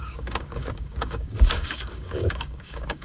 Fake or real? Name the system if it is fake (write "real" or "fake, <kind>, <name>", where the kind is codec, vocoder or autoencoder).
fake, codec, DAC